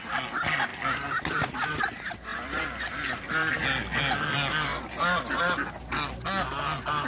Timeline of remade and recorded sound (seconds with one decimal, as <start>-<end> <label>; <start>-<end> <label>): 0.0-0.7 recorded; 0.7-1.8 remade; 1.8-2.3 recorded; 2.3-3.5 remade; 3.5-7.1 recorded